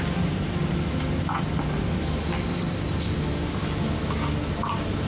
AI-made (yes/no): no